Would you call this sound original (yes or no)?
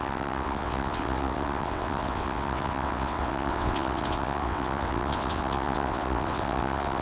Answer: no